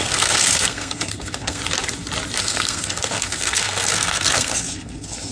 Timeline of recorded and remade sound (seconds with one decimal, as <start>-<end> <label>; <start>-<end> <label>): 0.0-1.6 remade; 1.6-2.4 recorded; 2.4-5.3 remade